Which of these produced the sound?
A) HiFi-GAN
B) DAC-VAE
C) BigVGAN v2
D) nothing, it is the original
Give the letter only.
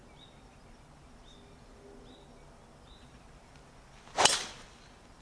D